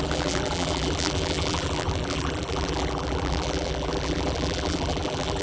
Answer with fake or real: fake